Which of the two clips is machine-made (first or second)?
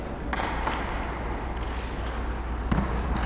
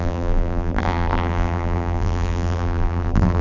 second